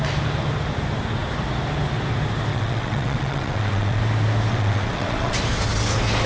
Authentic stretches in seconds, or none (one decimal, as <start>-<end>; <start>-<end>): 0.0-2.5; 4.0-4.5; 5.3-6.3